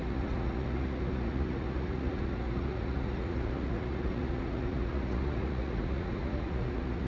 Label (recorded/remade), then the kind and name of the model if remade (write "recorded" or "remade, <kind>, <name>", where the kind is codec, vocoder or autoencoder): remade, vocoder, Vocos